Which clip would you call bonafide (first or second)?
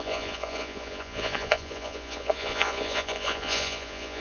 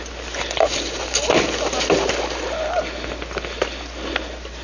second